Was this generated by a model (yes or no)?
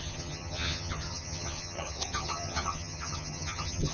yes